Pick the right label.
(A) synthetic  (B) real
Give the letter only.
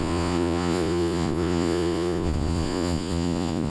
A